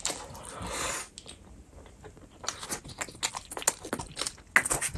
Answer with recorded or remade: recorded